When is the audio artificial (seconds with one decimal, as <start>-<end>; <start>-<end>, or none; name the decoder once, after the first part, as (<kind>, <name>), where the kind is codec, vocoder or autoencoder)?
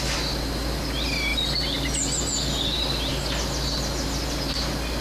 none